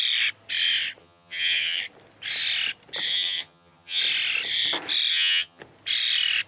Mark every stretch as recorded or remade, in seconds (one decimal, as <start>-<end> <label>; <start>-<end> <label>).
0.0-1.0 recorded; 1.0-1.8 remade; 1.8-3.1 recorded; 3.1-4.0 remade; 4.0-5.1 recorded; 5.1-5.6 remade; 5.6-6.5 recorded